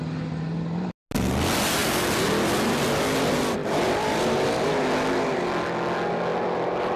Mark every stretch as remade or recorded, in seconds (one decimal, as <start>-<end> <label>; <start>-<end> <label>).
0.0-3.6 recorded; 3.6-4.2 remade; 4.2-6.3 recorded; 6.3-7.0 remade